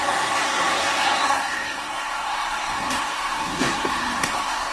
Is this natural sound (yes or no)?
no